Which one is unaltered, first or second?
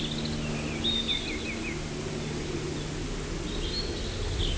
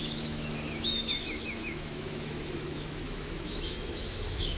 first